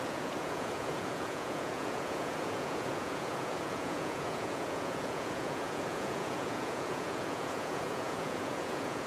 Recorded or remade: remade